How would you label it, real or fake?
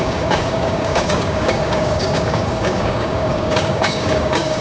fake